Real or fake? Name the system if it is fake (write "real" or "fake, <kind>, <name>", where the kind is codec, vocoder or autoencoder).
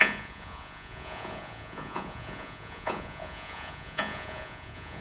fake, vocoder, Vocos